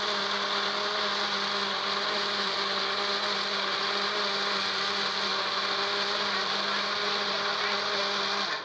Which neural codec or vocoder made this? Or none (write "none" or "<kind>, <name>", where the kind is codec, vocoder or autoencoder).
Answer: none